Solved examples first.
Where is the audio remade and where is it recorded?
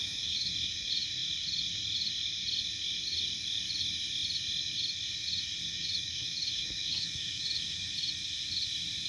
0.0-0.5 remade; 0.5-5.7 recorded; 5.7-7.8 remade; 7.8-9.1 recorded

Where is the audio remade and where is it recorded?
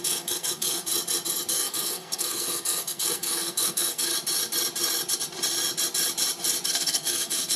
0.0-0.9 remade; 0.9-1.5 recorded; 1.5-4.1 remade; 4.1-6.7 recorded; 6.7-7.6 remade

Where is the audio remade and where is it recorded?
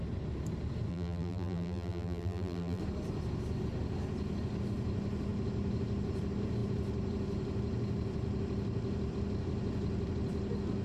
0.0-0.9 recorded; 0.9-2.8 remade; 2.8-10.8 recorded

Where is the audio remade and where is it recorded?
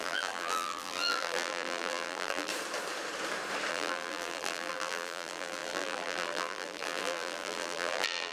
0.0-2.5 remade; 2.5-3.7 recorded; 3.7-8.3 remade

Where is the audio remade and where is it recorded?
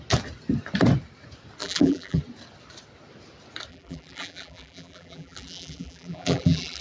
0.0-1.6 recorded; 1.6-2.2 remade; 2.2-3.7 recorded; 3.7-6.8 remade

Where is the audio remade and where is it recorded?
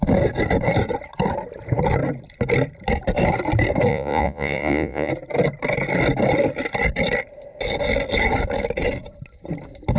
0.0-3.9 recorded; 3.9-5.1 remade; 5.1-10.0 recorded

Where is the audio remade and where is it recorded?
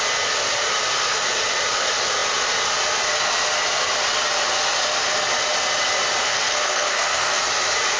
0.0-6.2 recorded; 6.2-7.4 remade; 7.4-8.0 recorded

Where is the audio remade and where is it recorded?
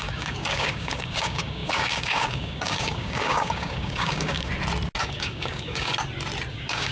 0.0-4.5 remade; 4.5-5.0 recorded; 5.0-5.9 remade; 5.9-6.5 recorded; 6.5-6.9 remade